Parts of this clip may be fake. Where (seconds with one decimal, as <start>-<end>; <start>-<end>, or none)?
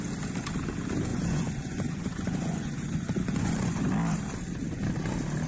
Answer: 1.1-3.8